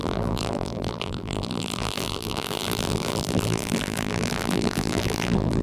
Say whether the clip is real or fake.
fake